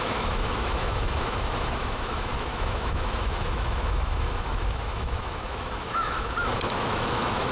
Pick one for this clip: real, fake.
fake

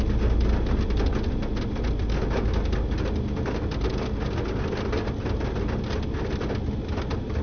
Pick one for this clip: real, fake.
real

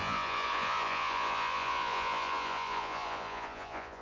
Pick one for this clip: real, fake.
fake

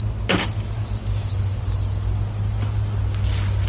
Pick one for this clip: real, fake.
real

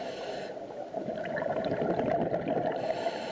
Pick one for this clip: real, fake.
real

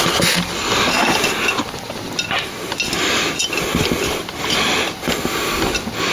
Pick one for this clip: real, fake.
real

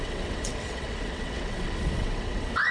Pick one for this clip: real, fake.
fake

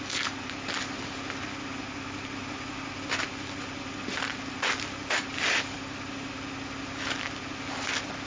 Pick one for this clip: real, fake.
real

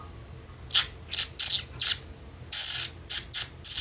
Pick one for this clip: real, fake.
real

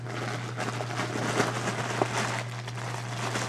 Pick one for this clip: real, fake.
real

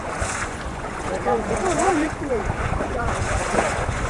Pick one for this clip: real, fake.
fake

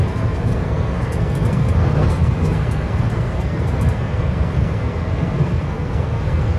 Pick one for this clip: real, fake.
fake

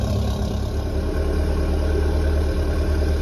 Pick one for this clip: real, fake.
real